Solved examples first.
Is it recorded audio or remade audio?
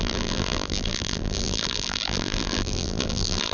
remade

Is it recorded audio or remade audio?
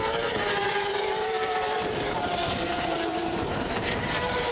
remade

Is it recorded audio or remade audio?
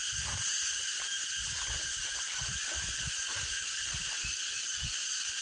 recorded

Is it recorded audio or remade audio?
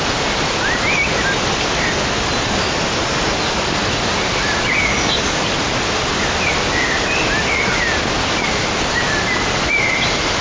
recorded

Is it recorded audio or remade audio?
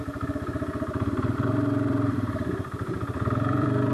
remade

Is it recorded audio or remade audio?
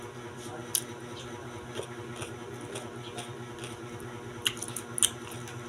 recorded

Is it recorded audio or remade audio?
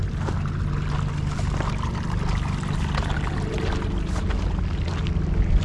recorded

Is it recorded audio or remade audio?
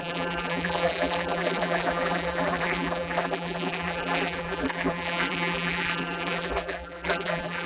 remade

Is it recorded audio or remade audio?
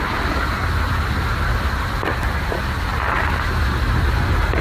recorded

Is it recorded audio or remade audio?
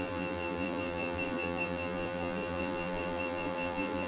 remade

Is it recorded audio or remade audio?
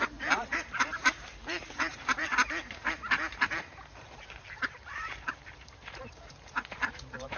remade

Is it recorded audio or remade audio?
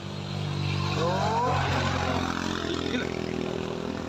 recorded